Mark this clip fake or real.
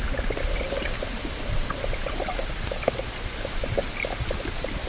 real